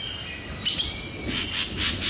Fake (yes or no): no